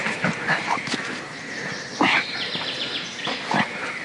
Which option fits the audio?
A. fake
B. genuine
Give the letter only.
A